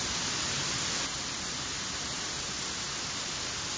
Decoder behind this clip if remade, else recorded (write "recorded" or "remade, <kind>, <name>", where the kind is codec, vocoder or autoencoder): recorded